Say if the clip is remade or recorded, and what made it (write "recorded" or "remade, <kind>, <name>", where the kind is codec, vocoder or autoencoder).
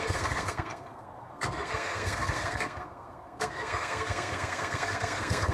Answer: remade, codec, SNAC